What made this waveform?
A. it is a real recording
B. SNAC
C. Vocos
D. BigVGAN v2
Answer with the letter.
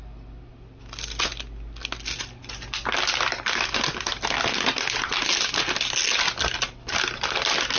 A